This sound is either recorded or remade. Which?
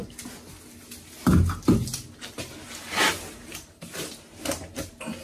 recorded